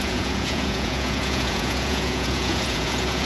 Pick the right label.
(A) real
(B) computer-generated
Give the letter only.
B